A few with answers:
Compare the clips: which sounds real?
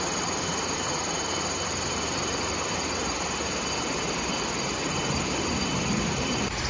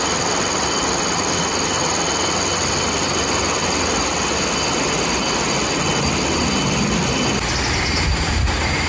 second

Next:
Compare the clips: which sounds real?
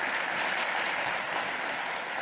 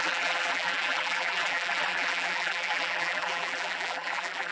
first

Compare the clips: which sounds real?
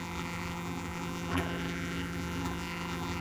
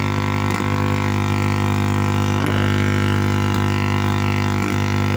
second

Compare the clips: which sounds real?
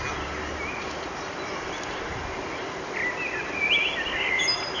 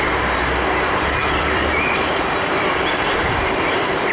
first